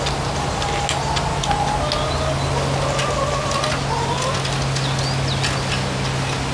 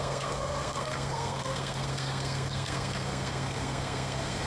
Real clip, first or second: first